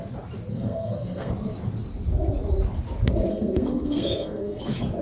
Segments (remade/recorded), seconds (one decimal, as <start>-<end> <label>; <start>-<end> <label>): 0.0-0.5 recorded; 0.5-1.3 remade; 1.3-3.3 recorded; 3.3-4.6 remade; 4.6-5.0 recorded